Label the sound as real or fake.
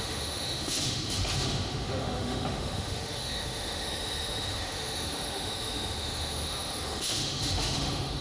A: fake